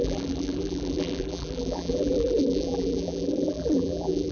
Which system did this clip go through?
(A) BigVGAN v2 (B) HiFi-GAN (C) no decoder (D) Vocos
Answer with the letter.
A